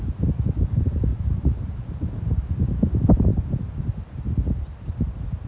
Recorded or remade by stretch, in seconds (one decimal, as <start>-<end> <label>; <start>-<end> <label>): 0.0-1.1 recorded; 1.1-2.0 remade; 2.0-5.5 recorded